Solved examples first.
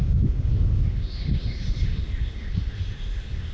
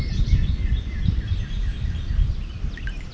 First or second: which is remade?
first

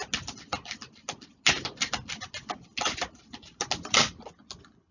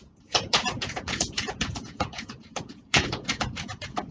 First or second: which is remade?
second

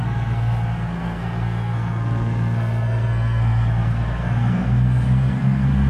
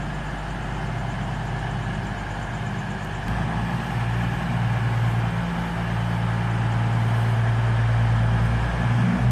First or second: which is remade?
first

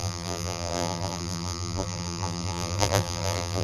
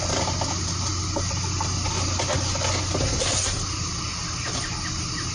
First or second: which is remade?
first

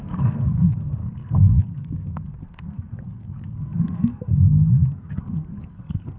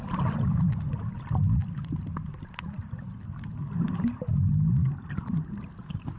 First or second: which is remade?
first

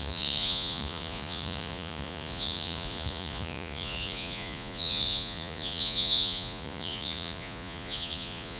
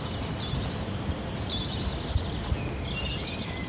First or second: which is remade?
first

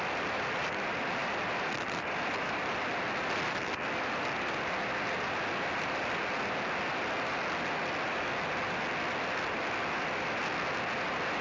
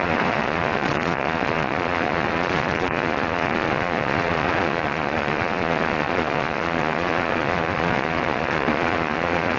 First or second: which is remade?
second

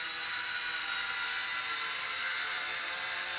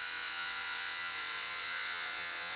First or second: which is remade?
second